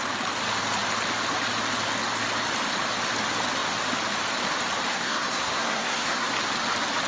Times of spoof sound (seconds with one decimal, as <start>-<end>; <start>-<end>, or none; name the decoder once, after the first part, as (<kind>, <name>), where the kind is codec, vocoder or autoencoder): 4.9-6.3 (codec, SNAC)